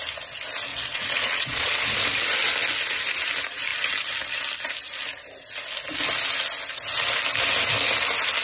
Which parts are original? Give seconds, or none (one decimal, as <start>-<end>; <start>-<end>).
0.0-0.7; 1.8-8.4